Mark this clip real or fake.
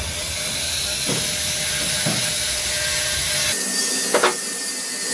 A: real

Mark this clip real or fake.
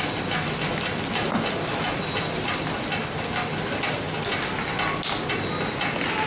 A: real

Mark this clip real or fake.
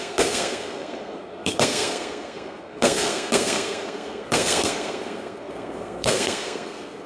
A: fake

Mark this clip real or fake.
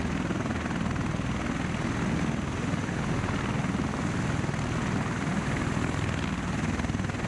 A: real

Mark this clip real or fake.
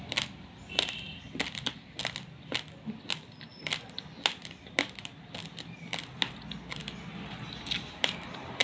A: real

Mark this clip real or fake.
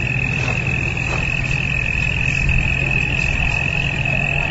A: real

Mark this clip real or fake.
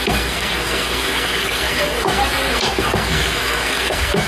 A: fake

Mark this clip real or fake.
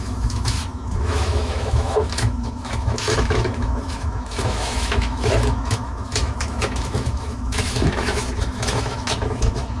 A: fake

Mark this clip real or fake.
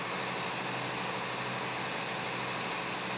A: real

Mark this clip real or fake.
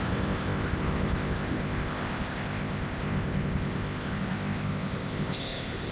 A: fake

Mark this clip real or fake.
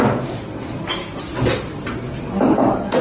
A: real